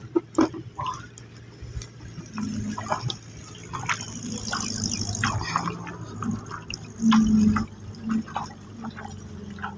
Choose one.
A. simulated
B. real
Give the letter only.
B